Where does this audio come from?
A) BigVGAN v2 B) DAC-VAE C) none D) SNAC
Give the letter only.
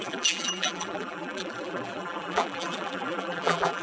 A